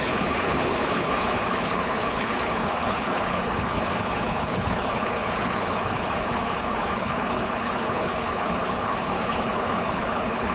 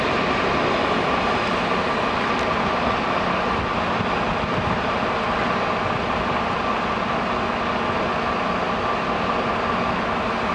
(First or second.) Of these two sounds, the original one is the second